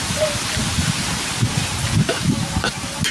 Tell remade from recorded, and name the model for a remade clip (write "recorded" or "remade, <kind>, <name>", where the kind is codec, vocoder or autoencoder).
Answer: recorded